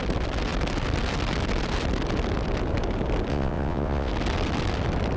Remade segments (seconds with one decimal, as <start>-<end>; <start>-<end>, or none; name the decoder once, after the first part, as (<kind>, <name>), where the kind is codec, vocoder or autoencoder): 3.3-4.1 (vocoder, WaveNeXt)